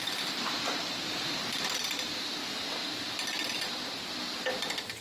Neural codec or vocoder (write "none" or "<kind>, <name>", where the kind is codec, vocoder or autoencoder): none